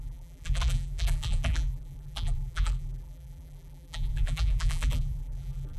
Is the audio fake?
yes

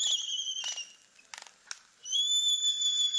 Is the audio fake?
no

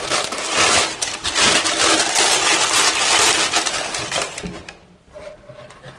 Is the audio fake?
no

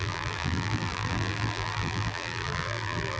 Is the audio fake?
yes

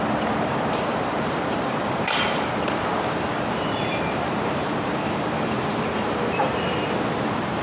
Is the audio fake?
yes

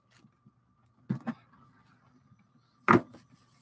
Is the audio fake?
no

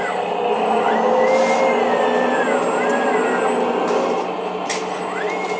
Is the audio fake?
no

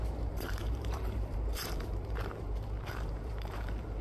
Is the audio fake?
yes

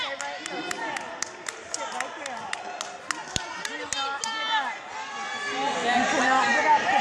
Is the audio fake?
no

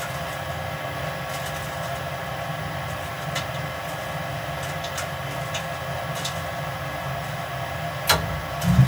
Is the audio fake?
no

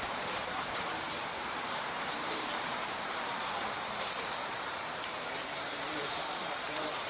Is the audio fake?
yes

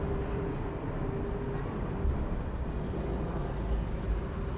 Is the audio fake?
no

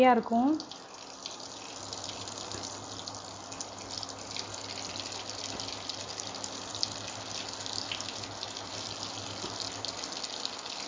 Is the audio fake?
no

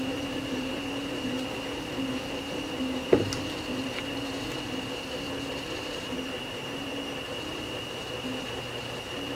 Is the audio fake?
yes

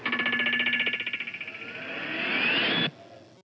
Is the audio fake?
no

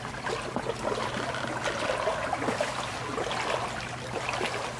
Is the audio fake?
no